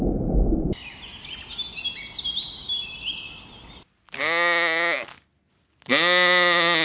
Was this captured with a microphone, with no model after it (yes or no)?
yes